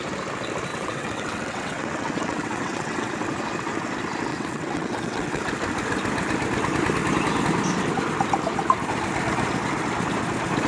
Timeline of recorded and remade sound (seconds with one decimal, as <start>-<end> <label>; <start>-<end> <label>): 0.0-0.7 recorded; 0.7-3.1 remade; 3.1-4.3 recorded; 4.3-5.4 remade; 5.4-10.7 recorded